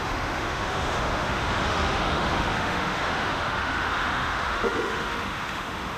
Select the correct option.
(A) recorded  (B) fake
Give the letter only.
B